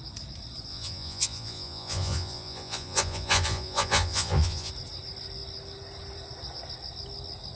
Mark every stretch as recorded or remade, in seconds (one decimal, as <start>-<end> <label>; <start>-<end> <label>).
0.0-0.7 recorded; 0.7-4.7 remade; 4.7-7.6 recorded